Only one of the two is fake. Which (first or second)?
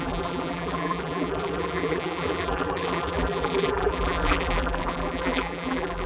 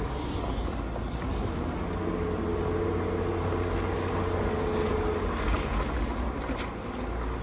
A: first